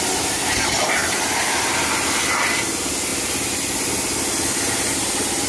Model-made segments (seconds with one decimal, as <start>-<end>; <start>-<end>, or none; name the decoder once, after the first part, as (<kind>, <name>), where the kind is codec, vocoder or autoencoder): none